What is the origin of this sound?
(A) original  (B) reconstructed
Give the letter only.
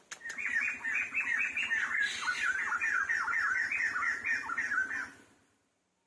A